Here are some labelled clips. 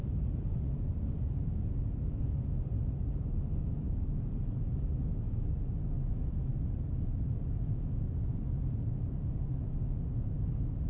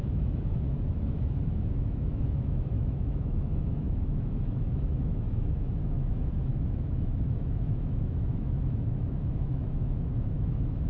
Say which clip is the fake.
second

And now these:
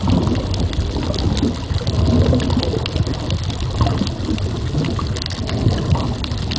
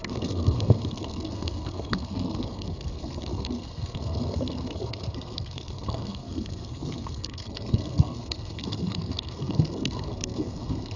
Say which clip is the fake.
second